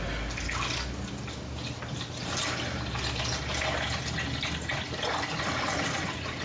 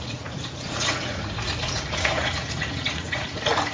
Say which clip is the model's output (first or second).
second